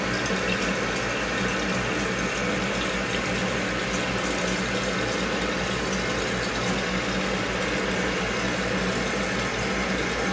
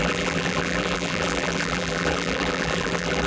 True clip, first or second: first